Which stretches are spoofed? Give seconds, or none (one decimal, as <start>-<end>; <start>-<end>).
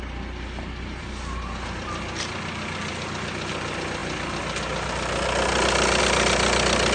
none